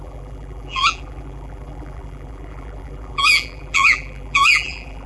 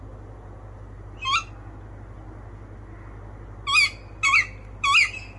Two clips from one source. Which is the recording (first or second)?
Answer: second